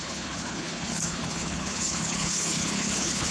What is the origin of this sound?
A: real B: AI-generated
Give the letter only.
B